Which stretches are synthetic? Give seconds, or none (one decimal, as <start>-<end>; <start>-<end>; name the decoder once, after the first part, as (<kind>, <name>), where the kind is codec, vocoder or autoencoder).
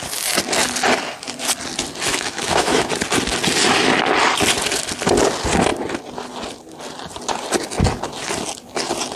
2.1-2.9 (autoencoder, DAC-VAE)